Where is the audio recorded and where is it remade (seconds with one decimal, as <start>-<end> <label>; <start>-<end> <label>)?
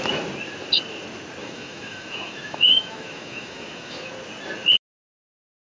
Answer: 0.0-1.4 recorded; 1.4-4.1 remade; 4.1-5.8 recorded